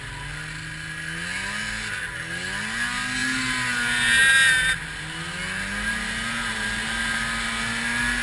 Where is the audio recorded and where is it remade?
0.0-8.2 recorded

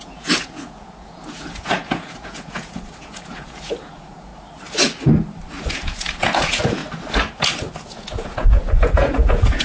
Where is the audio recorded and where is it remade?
0.0-4.3 remade; 4.3-5.7 recorded; 5.7-6.8 remade; 6.8-7.8 recorded; 7.8-9.6 remade

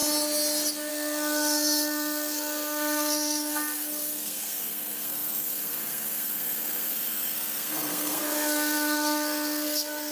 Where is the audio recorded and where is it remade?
0.0-0.9 recorded; 0.9-10.1 remade